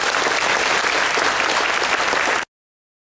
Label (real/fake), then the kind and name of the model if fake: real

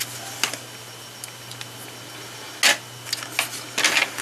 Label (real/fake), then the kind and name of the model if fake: real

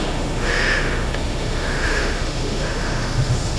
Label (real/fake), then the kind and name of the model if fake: fake, autoencoder, DAC-VAE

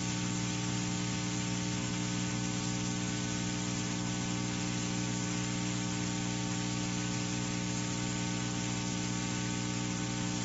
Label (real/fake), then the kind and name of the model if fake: real